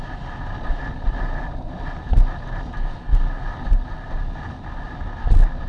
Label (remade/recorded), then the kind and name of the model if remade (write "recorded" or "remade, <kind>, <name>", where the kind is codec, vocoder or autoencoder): recorded